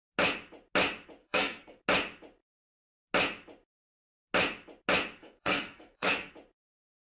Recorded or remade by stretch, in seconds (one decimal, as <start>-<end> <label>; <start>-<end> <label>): 0.0-1.2 recorded; 1.2-1.8 remade; 1.8-5.2 recorded; 5.2-6.3 remade; 6.3-7.2 recorded